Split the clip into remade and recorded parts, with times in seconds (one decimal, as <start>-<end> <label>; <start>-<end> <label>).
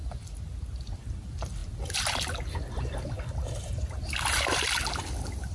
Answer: 0.0-5.5 recorded